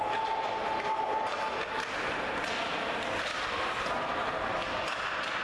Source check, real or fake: real